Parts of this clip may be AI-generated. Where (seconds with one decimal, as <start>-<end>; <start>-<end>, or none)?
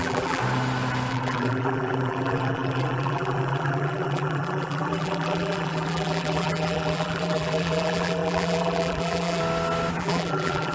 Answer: 0.0-0.4; 1.1-9.4; 10.0-10.7